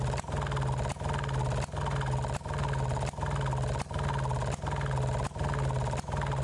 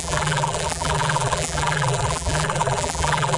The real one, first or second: first